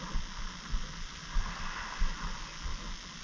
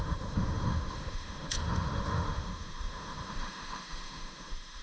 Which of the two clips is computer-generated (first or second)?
second